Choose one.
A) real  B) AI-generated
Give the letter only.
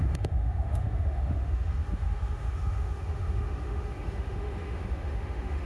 B